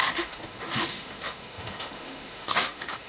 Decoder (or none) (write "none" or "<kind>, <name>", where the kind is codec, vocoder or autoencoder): autoencoder, DAC-VAE